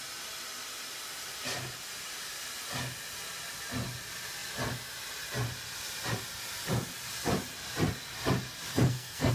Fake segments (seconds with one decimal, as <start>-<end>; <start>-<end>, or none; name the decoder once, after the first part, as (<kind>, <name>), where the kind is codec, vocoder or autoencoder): 8.7-9.3 (codec, SNAC)